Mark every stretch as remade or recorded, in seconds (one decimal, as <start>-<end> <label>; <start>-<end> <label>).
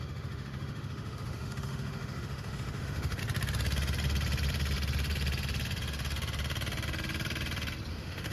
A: 0.0-3.2 remade; 3.2-7.9 recorded; 7.9-8.3 remade